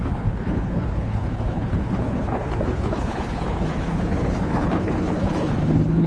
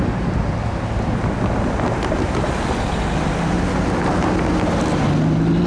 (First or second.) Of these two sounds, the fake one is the first